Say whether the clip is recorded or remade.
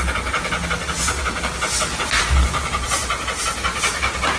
recorded